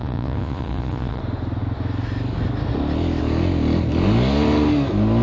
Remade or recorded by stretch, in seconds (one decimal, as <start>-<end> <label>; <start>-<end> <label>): 0.0-1.2 remade; 1.2-5.2 recorded

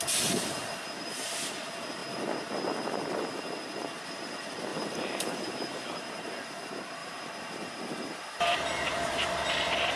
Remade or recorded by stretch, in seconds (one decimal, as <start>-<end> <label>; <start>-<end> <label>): 0.0-4.7 recorded; 4.7-6.3 remade; 6.3-7.0 recorded; 7.0-9.3 remade; 9.3-10.0 recorded

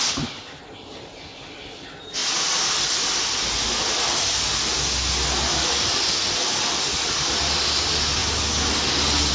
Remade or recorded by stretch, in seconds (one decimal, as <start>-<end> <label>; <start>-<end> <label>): 0.0-9.3 recorded

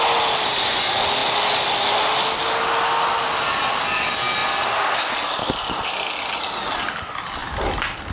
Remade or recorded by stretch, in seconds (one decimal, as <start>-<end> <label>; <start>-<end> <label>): 0.0-4.4 recorded; 4.4-5.2 remade; 5.2-8.1 recorded